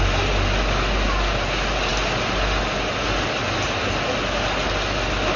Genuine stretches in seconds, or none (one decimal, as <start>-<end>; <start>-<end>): 0.0-5.4